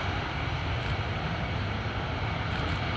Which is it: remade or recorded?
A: recorded